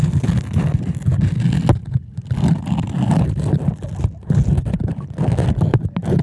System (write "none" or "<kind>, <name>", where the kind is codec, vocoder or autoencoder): none